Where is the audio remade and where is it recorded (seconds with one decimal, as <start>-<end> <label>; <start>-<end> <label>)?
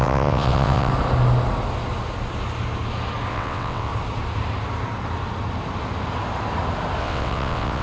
0.0-0.9 remade; 0.9-3.3 recorded; 3.3-3.9 remade; 3.9-7.0 recorded; 7.0-7.8 remade